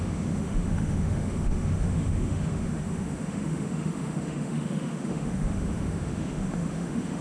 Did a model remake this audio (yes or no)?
yes